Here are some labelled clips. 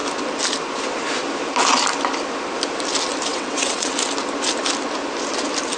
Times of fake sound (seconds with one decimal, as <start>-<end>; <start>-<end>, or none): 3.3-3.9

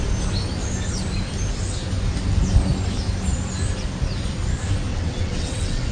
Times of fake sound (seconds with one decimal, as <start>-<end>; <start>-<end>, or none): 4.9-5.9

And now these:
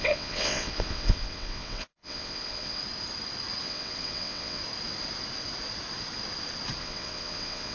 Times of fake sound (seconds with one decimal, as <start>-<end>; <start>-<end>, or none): 0.0-2.8; 3.6-4.6; 6.8-7.7